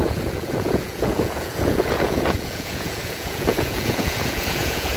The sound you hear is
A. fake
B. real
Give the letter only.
A